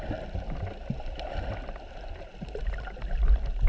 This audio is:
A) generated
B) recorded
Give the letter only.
B